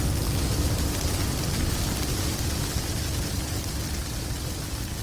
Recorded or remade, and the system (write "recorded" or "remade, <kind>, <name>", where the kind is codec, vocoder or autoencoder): recorded